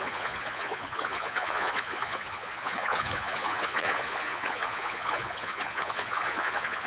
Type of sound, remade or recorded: remade